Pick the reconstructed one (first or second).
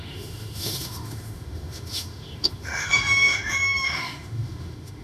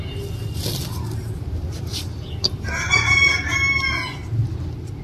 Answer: first